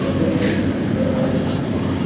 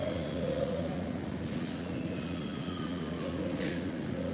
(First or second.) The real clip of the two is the first